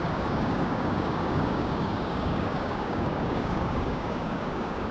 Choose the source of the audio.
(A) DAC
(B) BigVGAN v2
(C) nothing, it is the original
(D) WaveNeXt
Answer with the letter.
A